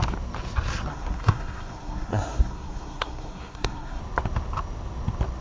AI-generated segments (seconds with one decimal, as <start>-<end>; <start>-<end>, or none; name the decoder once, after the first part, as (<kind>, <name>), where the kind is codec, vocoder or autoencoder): 0.9-4.0 (codec, SNAC)